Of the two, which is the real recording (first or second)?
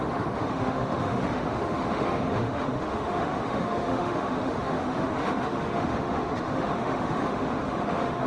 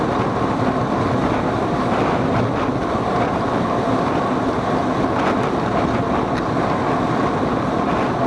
second